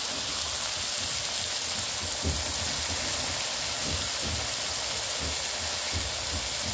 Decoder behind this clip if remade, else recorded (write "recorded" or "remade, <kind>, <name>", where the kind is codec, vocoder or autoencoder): recorded